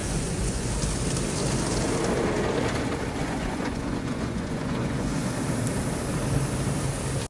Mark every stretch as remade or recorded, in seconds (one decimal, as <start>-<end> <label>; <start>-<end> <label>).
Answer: 0.0-0.7 remade; 0.7-3.2 recorded; 3.2-5.3 remade; 5.3-7.3 recorded